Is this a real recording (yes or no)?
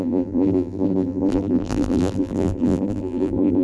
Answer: no